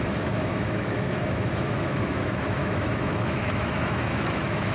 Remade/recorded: remade